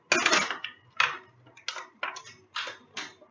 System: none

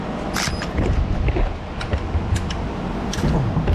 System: none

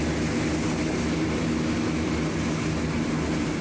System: none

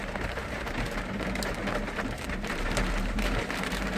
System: vocoder, BigVGAN v2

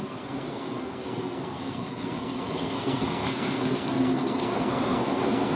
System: codec, SNAC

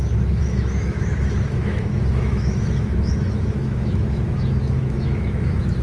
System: autoencoder, DAC-VAE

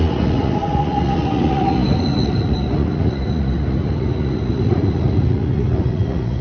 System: vocoder, Vocos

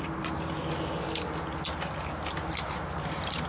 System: none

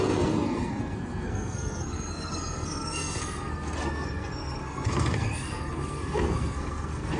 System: codec, SNAC